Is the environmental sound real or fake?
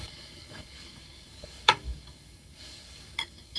fake